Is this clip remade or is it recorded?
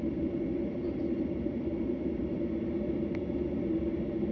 recorded